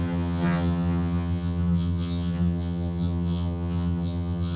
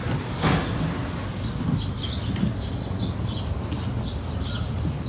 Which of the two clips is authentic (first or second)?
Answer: second